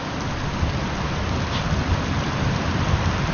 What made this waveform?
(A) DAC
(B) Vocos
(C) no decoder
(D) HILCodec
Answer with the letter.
C